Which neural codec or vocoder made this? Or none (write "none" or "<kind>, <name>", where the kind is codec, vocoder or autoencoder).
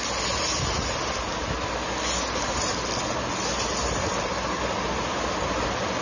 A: none